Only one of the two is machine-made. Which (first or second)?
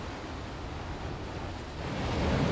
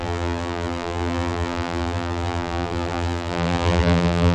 second